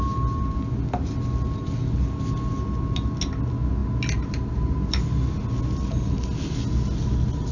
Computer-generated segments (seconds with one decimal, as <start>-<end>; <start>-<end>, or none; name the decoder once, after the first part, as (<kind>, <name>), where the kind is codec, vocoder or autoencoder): none